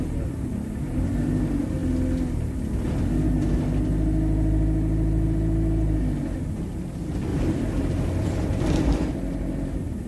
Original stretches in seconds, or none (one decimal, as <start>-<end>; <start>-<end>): 0.0-7.3